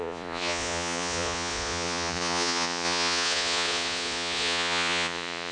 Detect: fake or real fake